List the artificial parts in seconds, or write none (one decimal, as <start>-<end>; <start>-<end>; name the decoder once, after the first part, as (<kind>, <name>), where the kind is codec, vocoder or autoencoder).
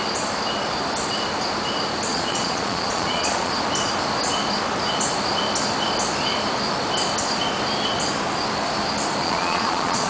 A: 2.1-3.5 (vocoder, Vocos); 9.2-10.1